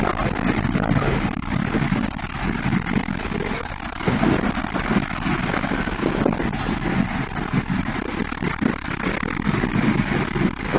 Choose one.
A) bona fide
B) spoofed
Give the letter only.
A